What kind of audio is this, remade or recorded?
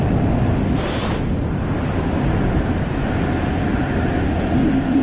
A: recorded